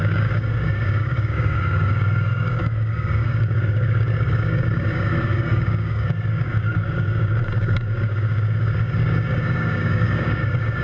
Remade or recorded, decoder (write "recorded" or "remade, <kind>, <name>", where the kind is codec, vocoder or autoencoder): remade, codec, DAC